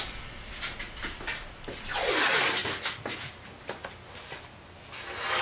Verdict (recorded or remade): recorded